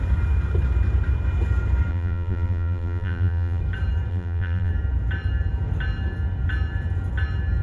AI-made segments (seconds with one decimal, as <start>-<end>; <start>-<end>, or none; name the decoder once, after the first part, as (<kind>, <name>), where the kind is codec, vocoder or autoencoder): 1.9-3.6 (vocoder, BigVGAN v2); 4.1-4.7